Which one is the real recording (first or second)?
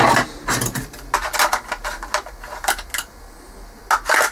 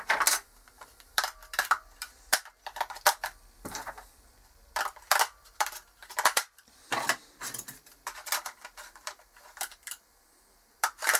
first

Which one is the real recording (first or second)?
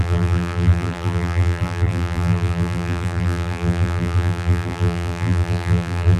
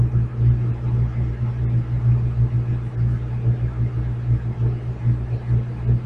second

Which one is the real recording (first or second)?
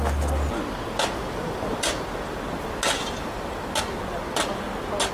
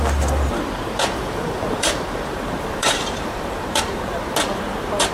first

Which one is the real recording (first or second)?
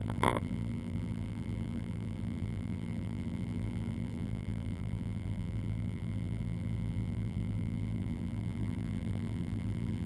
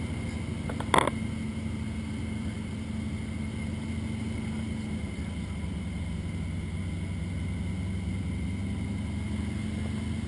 second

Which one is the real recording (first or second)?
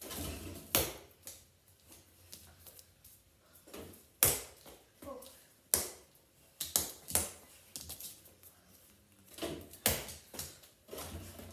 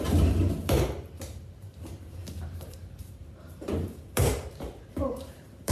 first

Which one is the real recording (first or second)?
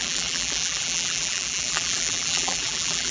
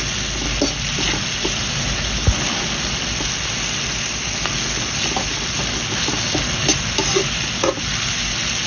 second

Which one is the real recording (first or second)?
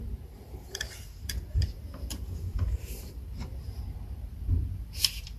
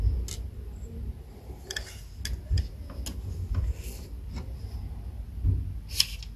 second